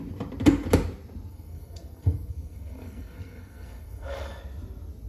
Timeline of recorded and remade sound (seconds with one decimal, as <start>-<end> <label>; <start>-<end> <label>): 0.0-1.3 recorded; 1.3-4.4 remade; 4.4-5.1 recorded